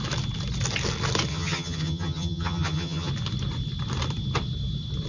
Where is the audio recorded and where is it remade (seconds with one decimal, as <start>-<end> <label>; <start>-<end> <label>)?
0.0-1.3 recorded; 1.3-3.1 remade; 3.1-5.1 recorded